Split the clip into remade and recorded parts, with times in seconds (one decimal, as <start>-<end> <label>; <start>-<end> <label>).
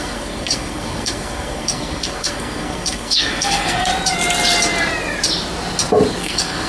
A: 0.0-3.9 remade; 3.9-6.2 recorded; 6.2-6.7 remade